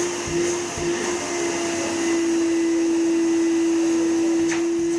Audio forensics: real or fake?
real